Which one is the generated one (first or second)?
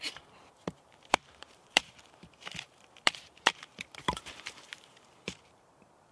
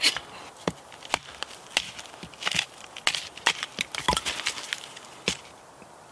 first